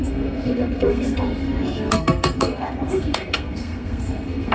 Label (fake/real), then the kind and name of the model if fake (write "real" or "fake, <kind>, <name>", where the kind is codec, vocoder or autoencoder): fake, codec, SNAC